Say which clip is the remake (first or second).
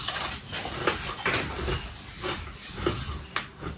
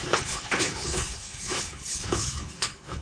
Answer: second